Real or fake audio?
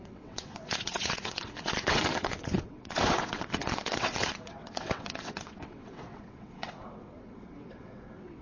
fake